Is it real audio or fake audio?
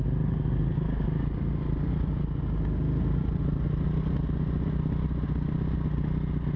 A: real